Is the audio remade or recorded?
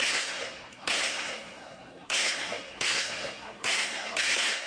remade